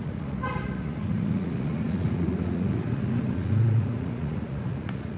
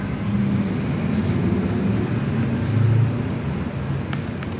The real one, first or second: second